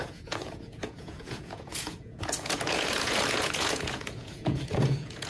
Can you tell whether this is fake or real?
fake